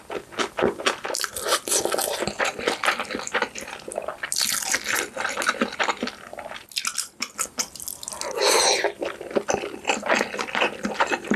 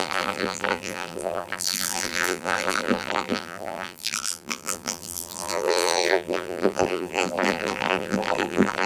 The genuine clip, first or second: first